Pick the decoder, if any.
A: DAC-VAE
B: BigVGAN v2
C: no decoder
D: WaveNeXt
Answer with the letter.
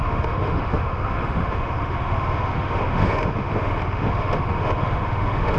A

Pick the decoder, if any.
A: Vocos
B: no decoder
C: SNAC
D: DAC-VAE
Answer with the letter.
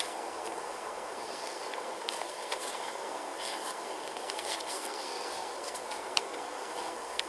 C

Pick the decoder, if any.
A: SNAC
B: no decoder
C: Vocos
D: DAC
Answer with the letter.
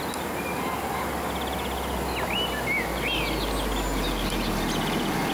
B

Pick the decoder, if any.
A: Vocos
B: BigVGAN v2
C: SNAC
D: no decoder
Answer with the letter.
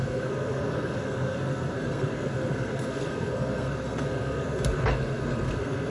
C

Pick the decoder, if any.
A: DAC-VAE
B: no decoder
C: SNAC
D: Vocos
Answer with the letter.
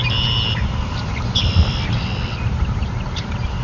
B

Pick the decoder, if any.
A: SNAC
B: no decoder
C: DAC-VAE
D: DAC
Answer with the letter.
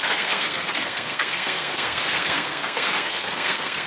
A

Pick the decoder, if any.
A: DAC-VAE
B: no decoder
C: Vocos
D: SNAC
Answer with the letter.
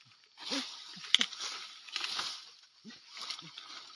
B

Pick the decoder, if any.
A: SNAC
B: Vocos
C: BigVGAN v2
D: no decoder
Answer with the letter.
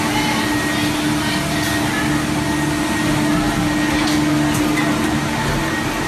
D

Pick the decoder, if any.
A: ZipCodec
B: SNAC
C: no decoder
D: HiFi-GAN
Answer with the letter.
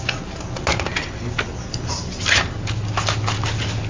C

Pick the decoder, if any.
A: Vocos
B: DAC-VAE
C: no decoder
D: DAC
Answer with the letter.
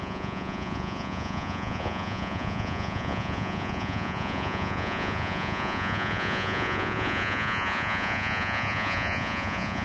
A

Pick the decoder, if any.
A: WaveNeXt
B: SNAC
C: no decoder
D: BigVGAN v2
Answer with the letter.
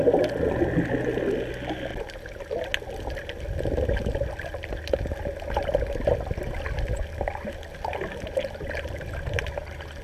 C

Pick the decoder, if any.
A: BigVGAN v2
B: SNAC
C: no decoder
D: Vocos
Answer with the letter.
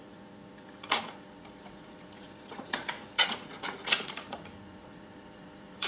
D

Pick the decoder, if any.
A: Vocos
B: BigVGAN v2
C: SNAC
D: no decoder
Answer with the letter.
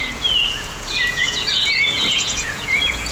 A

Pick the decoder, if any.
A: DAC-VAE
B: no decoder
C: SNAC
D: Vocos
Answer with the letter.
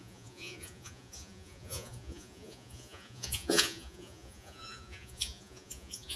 D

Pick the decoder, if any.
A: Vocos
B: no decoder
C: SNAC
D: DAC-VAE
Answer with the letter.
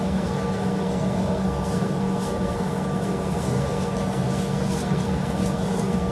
C